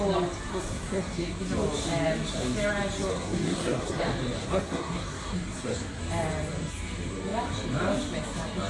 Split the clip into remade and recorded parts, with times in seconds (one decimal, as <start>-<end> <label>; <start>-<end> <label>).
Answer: 0.0-0.5 recorded; 0.5-1.4 remade; 1.4-3.1 recorded; 3.1-4.0 remade; 4.0-4.4 recorded; 4.4-6.0 remade; 6.0-8.7 recorded

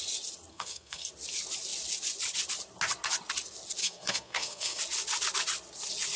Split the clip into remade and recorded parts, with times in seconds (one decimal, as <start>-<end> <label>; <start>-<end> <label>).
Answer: 0.0-0.5 recorded; 0.5-1.1 remade; 1.1-3.8 recorded; 3.8-4.8 remade; 4.8-6.2 recorded

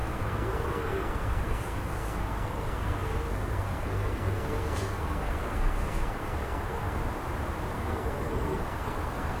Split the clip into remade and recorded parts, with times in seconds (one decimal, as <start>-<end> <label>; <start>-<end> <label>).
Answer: 0.0-7.0 remade; 7.0-7.7 recorded; 7.7-9.4 remade

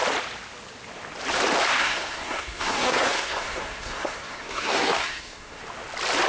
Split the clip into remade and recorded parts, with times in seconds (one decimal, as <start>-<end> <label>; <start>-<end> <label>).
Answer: 0.0-1.8 recorded; 1.8-5.6 remade; 5.6-6.3 recorded